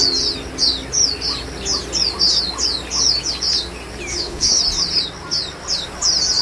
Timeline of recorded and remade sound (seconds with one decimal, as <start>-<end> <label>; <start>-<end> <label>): 0.0-4.1 recorded; 4.1-4.6 remade; 4.6-6.4 recorded